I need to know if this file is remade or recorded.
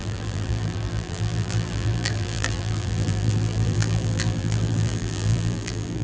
remade